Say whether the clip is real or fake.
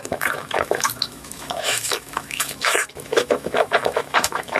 fake